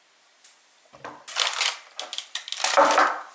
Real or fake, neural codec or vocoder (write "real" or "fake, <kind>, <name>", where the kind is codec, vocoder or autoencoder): real